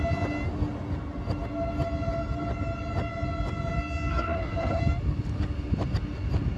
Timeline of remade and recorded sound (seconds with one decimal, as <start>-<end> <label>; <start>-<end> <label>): 0.0-4.1 recorded; 4.1-4.8 remade; 4.8-6.6 recorded